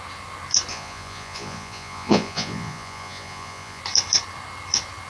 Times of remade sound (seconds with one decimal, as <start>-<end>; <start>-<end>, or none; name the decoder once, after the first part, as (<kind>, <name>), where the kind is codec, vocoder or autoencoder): 0.7-3.8 (vocoder, Vocos)